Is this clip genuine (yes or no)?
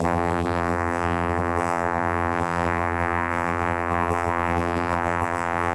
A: no